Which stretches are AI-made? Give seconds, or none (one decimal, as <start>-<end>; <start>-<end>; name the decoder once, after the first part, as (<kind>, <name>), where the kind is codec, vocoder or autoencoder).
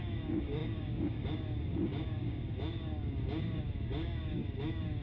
0.0-5.0 (codec, DAC)